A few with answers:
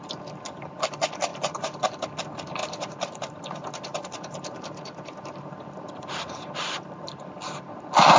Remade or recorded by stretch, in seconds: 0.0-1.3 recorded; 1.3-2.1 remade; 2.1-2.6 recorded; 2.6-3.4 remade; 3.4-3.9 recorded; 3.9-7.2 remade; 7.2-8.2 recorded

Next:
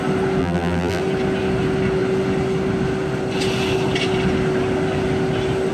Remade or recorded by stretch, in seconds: 0.0-0.4 recorded; 0.4-1.0 remade; 1.0-5.7 recorded